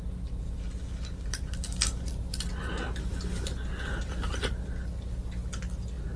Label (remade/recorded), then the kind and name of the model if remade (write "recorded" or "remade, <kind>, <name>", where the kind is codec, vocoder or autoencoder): recorded